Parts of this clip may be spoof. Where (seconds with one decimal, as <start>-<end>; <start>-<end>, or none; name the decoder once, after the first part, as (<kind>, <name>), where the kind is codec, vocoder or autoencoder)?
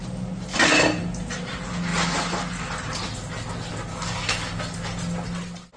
3.9-4.6 (codec, DAC)